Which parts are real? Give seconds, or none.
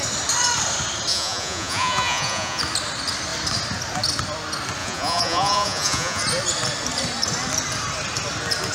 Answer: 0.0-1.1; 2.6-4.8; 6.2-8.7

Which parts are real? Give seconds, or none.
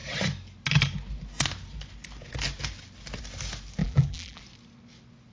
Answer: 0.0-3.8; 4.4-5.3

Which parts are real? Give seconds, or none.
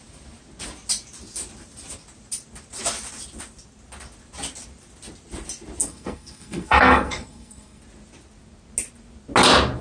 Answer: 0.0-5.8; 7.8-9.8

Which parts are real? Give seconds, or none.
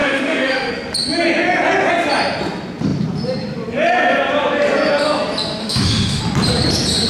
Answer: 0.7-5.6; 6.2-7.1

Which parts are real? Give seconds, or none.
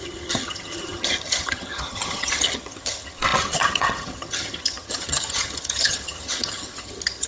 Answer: none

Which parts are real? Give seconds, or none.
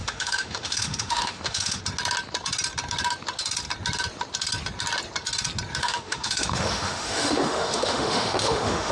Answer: 1.8-5.8